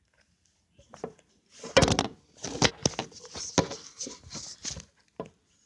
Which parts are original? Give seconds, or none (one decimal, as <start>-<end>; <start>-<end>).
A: 0.0-5.7